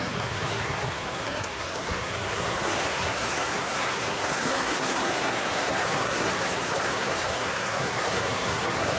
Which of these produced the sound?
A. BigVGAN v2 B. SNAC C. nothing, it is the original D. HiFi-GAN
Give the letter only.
B